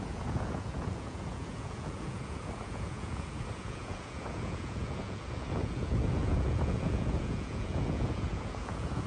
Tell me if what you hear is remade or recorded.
remade